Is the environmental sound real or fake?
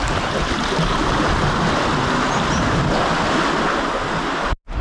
real